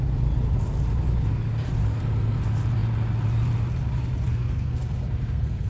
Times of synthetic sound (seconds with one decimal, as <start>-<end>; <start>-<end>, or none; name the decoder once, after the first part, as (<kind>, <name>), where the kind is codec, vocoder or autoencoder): 1.9-2.4 (codec, SNAC); 4.3-5.7